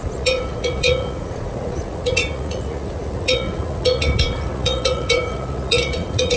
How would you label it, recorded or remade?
remade